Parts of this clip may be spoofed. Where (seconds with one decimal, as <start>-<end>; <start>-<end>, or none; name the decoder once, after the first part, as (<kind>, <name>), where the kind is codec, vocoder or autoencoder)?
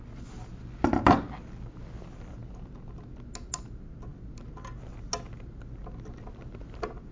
none